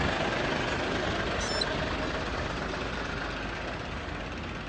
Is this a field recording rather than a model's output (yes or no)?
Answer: yes